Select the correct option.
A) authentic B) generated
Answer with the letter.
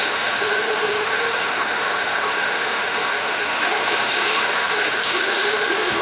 B